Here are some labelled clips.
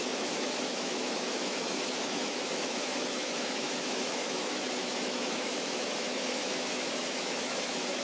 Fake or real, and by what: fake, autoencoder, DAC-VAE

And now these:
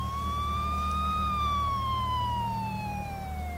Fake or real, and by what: real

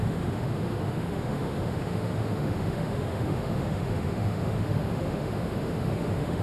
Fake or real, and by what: fake, autoencoder, DAC-VAE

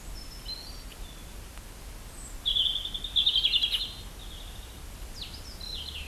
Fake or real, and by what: real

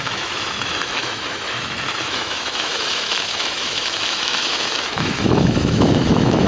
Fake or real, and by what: fake, autoencoder, DAC-VAE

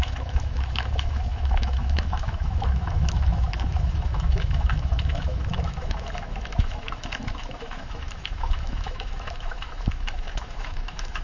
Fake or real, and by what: fake, autoencoder, DAC-VAE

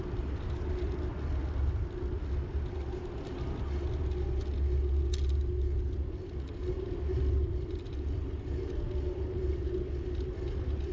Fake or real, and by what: real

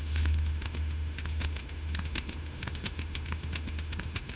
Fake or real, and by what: fake, autoencoder, DAC-VAE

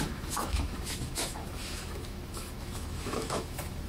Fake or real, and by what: fake, autoencoder, DAC-VAE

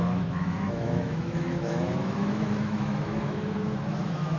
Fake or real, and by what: fake, autoencoder, DAC-VAE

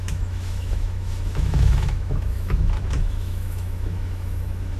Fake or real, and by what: fake, autoencoder, DAC-VAE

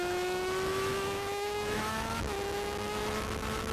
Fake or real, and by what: fake, autoencoder, DAC-VAE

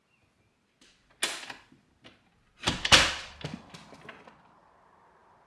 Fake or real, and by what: real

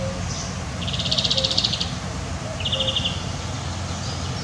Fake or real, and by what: real